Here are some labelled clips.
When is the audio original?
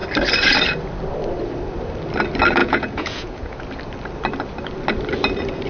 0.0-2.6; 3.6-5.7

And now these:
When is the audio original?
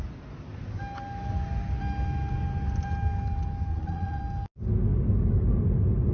0.0-3.7; 4.2-6.1